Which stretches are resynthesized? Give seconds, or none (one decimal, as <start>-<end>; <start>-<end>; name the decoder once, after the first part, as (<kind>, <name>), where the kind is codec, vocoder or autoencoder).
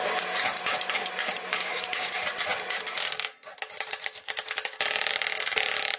1.5-2.1 (codec, DAC)